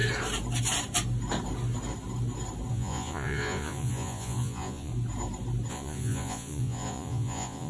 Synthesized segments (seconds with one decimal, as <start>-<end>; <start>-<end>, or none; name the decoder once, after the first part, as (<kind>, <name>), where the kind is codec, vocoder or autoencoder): 2.7-4.9 (vocoder, Vocos); 5.7-7.7